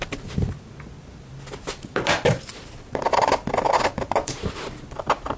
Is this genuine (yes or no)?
yes